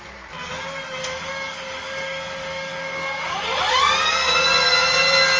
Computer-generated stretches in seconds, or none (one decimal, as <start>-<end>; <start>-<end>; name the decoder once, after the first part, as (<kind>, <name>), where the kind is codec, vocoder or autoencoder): 1.0-3.8 (codec, DAC)